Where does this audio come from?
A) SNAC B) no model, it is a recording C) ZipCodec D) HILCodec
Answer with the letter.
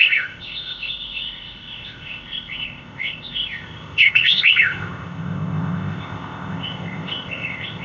C